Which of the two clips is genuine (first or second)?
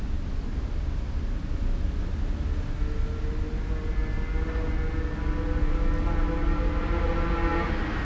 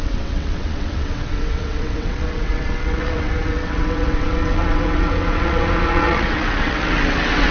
first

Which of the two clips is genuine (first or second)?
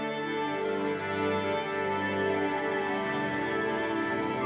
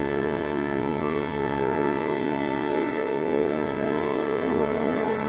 first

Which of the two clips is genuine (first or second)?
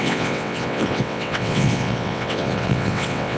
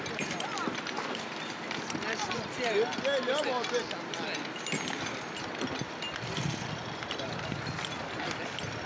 second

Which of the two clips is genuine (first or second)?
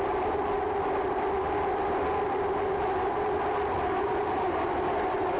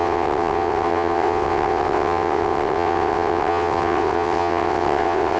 first